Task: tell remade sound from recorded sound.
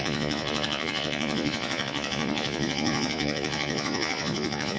remade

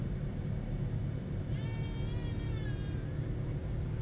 recorded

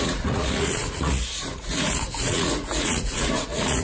remade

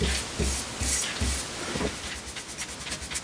recorded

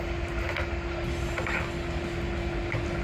recorded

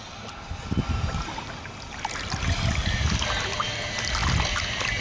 recorded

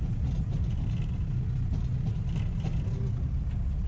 recorded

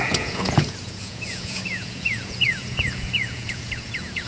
remade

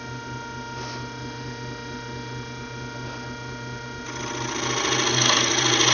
recorded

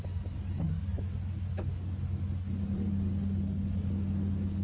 recorded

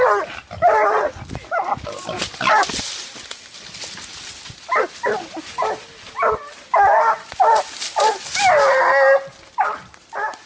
recorded